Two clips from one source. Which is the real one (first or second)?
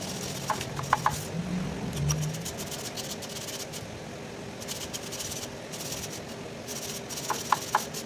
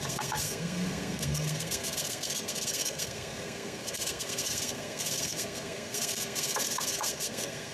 first